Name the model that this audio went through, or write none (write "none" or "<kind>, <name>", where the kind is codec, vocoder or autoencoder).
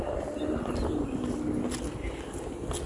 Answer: none